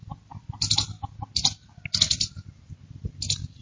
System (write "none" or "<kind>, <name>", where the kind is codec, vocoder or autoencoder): none